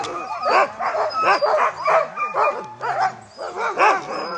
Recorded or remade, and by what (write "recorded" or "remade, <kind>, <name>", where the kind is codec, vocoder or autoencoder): recorded